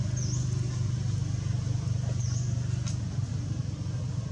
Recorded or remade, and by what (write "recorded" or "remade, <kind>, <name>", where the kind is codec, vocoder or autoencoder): recorded